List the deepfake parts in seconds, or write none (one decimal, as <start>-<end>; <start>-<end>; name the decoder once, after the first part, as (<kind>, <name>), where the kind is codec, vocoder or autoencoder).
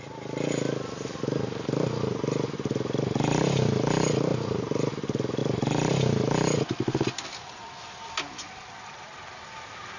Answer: 4.3-4.9 (vocoder, BigVGAN v2); 5.4-5.9